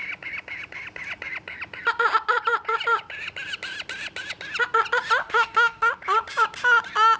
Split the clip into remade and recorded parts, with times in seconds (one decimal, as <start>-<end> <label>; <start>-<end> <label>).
0.0-5.2 recorded; 5.2-5.9 remade; 5.9-7.2 recorded